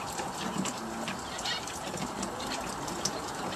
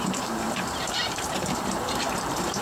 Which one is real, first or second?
first